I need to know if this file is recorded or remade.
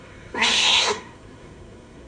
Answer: remade